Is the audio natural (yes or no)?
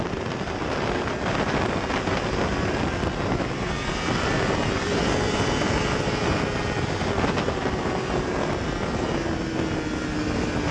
yes